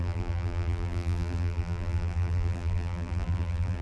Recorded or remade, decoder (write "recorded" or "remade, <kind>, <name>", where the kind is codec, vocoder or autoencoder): remade, vocoder, BigVGAN v2